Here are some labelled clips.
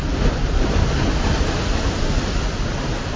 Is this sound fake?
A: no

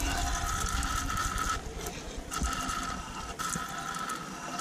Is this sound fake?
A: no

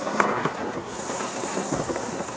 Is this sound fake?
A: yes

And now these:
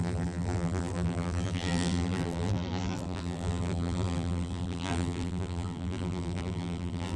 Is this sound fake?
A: yes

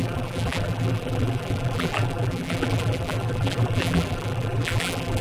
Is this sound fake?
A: yes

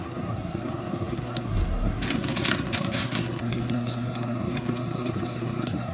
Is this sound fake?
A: yes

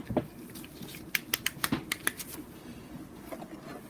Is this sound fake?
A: no